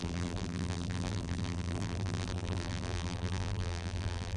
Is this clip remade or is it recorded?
remade